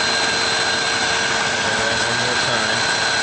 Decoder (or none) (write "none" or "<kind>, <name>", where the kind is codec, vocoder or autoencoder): none